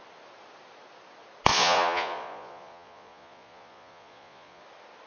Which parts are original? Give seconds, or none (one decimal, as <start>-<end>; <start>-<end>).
0.0-1.5; 4.6-5.1